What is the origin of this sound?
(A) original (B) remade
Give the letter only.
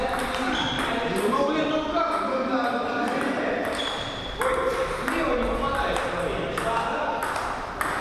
A